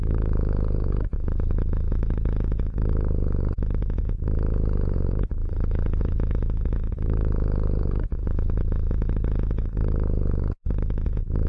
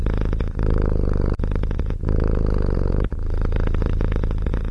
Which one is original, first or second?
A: second